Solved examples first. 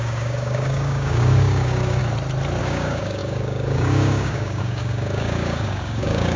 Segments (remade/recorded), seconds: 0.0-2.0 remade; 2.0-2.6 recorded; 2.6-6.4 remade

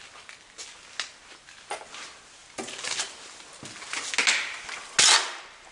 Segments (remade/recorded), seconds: 0.0-5.7 recorded

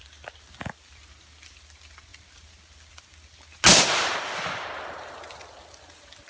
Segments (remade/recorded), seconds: 0.0-6.3 recorded

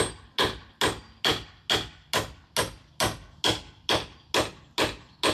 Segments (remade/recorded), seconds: 0.0-5.3 recorded

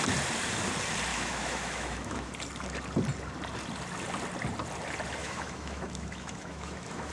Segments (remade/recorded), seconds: 0.0-1.1 recorded; 1.1-2.3 remade; 2.3-5.2 recorded; 5.2-7.1 remade

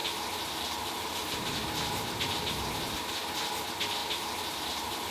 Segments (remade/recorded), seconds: 0.0-3.1 remade; 3.1-4.0 recorded; 4.0-5.1 remade

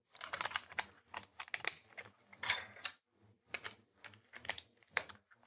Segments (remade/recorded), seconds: 0.0-2.3 recorded; 2.3-4.5 remade; 4.5-5.5 recorded

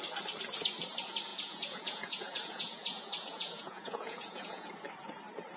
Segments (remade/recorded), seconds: 0.0-1.3 recorded; 1.3-4.7 remade; 4.7-5.6 recorded